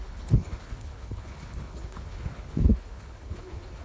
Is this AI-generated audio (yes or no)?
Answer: yes